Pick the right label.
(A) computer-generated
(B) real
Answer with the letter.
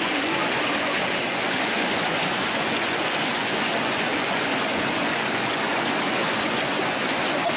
A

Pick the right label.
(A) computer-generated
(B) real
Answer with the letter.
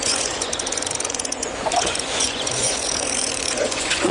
A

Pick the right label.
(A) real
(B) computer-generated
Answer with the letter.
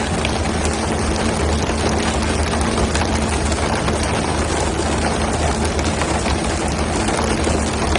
A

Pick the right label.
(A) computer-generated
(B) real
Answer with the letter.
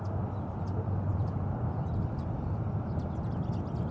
B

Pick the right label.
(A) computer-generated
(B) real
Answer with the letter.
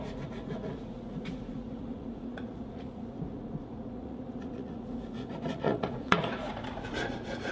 A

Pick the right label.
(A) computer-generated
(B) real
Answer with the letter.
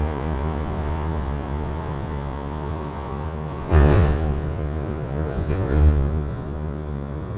A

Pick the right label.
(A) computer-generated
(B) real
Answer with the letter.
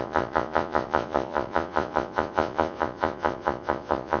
A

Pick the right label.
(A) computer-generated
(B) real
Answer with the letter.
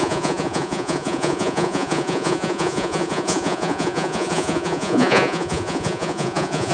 A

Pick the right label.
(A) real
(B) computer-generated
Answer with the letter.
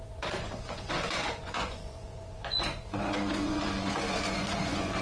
B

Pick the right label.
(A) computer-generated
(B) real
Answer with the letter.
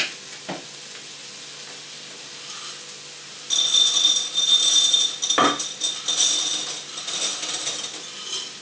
B